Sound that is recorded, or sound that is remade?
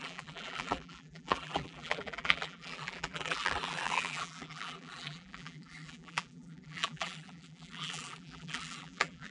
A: remade